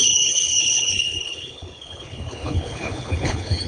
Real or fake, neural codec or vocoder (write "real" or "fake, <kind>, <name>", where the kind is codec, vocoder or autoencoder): fake, codec, HILCodec